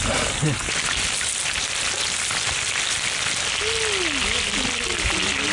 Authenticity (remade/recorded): recorded